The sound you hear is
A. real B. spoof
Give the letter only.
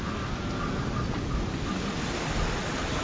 A